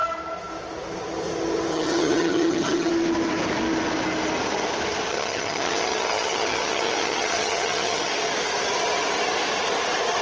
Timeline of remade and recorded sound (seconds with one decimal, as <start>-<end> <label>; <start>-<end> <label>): 0.0-1.7 recorded; 1.7-2.9 remade; 2.9-5.1 recorded; 5.1-8.1 remade; 8.1-10.2 recorded